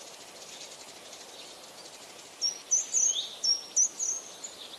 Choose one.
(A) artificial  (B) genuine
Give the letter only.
B